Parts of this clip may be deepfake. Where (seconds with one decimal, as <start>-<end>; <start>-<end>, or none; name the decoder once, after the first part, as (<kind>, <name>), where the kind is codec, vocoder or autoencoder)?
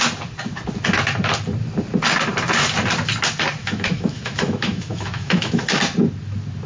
3.6-5.6 (autoencoder, DAC-VAE)